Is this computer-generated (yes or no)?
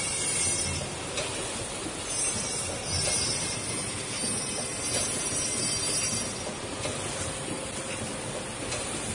no